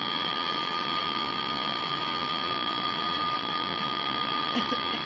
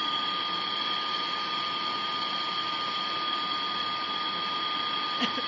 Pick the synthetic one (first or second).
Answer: first